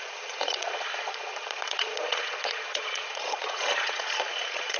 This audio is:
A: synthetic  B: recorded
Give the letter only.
A